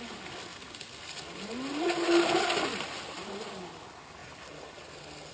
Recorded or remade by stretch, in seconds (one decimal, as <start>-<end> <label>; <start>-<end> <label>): 0.0-5.3 recorded